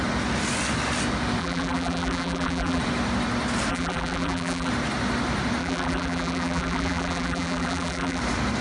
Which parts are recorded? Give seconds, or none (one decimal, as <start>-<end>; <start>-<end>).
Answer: 0.0-1.4; 2.8-3.7; 4.7-5.6; 8.2-8.6